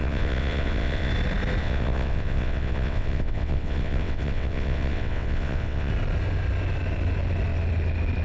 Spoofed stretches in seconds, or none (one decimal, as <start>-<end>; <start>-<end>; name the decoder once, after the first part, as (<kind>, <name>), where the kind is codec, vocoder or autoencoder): 0.0-1.1 (vocoder, WaveNeXt); 1.6-5.9